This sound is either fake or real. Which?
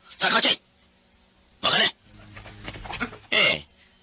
real